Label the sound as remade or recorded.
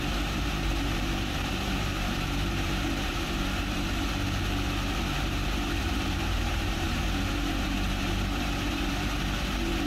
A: remade